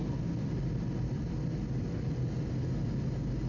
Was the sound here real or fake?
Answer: real